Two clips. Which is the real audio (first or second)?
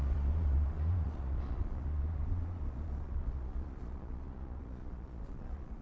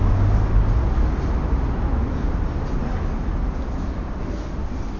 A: second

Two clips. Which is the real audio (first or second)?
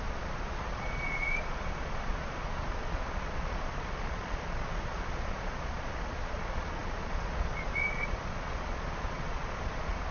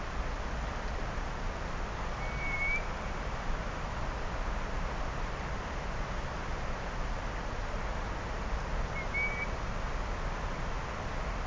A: second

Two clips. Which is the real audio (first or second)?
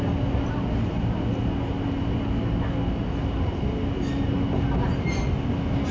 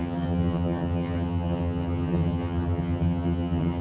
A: first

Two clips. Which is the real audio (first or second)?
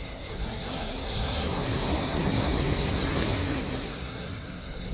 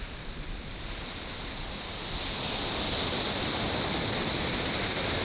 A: second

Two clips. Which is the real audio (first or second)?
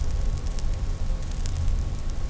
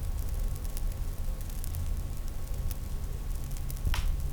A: second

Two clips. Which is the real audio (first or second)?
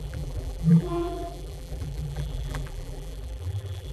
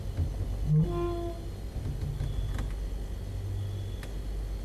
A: second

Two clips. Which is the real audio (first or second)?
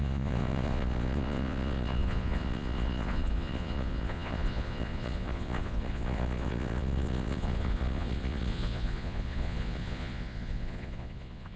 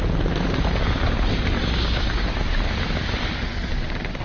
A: second